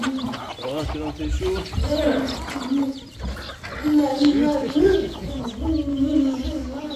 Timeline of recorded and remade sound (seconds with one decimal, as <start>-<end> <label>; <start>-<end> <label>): 0.0-4.1 recorded; 4.1-5.4 remade; 5.4-5.9 recorded; 5.9-7.0 remade